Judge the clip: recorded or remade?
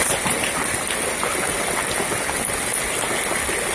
recorded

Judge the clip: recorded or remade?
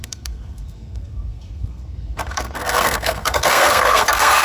remade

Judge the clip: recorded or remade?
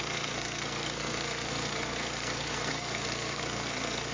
remade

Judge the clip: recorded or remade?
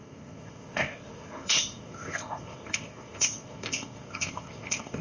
remade